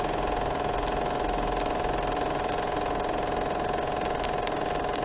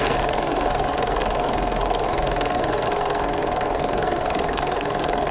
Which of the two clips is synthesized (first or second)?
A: second